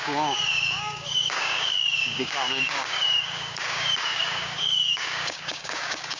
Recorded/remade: remade